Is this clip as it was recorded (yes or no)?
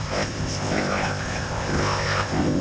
no